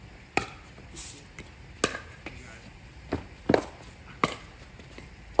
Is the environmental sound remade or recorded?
recorded